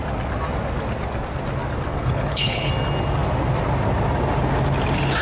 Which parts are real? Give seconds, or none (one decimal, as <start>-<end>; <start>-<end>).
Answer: 0.0-1.9; 2.7-5.2